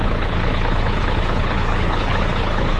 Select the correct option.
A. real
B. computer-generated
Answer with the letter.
B